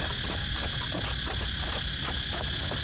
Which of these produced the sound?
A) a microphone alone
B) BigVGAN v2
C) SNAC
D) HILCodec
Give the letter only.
A